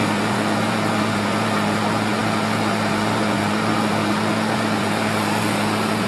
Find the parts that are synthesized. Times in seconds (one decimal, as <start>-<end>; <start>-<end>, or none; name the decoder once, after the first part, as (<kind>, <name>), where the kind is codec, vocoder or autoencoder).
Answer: 0.0-6.1 (vocoder, Vocos)